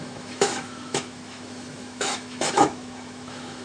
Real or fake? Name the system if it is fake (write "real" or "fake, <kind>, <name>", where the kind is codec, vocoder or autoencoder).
fake, autoencoder, DAC-VAE